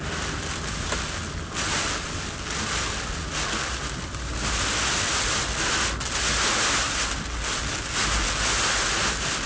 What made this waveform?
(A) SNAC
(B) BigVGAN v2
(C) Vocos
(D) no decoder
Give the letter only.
D